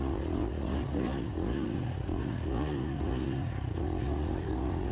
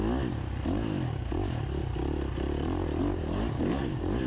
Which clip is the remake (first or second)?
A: first